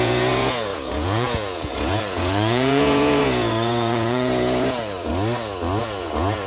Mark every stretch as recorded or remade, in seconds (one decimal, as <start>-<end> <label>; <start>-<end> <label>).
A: 0.0-5.1 remade; 5.1-5.8 recorded; 5.8-6.5 remade